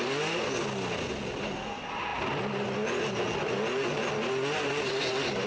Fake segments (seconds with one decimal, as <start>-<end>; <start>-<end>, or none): none